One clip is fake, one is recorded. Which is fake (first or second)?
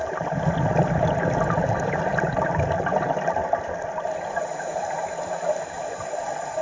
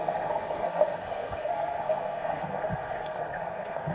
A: second